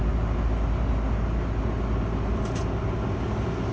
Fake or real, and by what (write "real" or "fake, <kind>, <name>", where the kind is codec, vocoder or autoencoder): real